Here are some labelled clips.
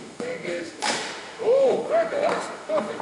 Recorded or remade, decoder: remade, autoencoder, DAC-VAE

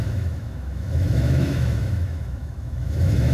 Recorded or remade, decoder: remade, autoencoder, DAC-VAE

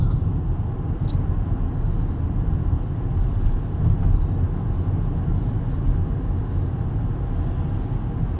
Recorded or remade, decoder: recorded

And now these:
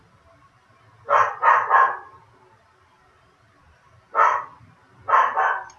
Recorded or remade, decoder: recorded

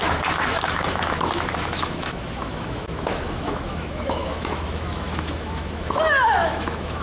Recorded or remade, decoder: remade, autoencoder, DAC-VAE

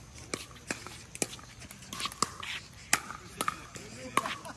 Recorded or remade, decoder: recorded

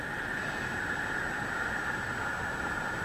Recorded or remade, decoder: recorded